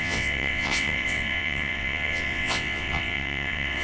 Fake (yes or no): yes